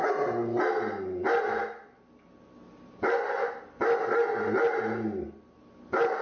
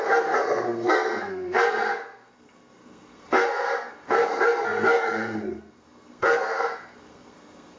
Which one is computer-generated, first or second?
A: second